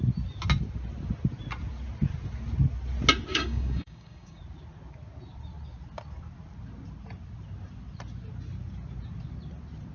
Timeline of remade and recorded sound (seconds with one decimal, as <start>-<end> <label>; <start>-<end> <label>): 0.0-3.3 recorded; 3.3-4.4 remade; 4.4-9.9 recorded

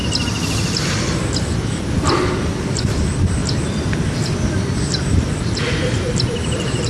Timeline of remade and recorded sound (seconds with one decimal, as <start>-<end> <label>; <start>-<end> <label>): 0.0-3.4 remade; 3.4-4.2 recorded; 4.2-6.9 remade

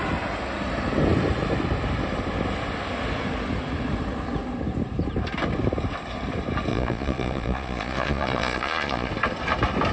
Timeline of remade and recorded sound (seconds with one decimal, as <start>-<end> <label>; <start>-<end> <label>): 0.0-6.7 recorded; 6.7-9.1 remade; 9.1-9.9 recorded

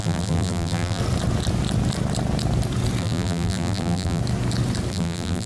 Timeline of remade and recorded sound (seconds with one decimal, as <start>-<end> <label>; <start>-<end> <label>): 0.0-1.0 remade; 1.0-3.0 recorded; 3.0-4.2 remade; 4.2-4.9 recorded; 4.9-5.5 remade